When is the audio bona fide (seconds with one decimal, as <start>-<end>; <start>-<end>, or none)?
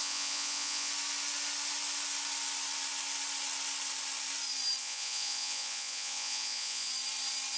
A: 0.9-4.8; 6.9-7.6